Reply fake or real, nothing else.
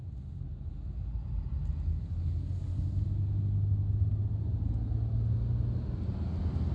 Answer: real